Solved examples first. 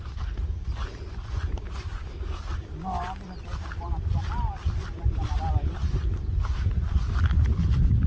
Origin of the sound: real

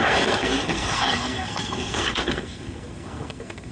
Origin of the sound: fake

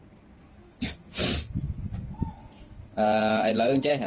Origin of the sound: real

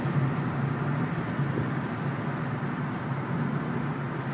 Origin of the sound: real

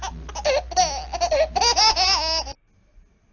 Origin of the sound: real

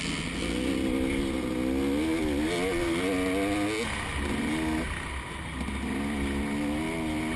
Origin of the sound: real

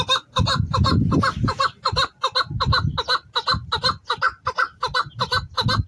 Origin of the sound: real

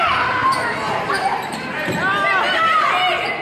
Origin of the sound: real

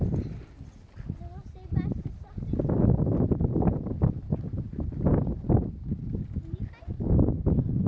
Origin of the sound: real